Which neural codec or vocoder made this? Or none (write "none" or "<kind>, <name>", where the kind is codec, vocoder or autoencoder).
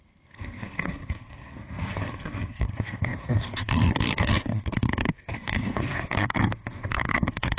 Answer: codec, SNAC